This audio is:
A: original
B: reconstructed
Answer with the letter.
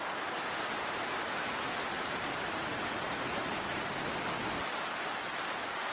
A